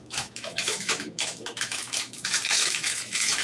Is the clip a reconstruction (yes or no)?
yes